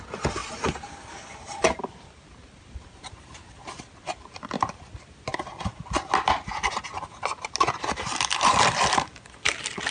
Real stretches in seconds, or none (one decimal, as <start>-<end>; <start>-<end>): 0.0-0.4; 3.1-9.9